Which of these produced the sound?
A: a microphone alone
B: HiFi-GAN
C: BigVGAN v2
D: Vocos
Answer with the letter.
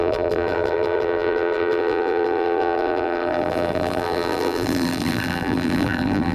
C